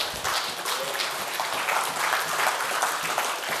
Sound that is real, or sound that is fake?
real